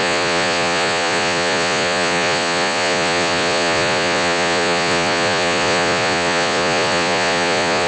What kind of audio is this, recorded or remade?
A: remade